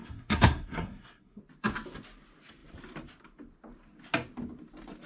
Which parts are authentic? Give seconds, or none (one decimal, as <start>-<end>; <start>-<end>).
1.4-5.1